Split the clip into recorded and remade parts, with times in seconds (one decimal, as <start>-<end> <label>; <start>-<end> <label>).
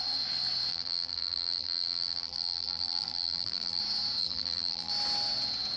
0.0-0.7 recorded; 0.7-3.8 remade; 3.8-4.2 recorded; 4.2-4.9 remade; 4.9-5.8 recorded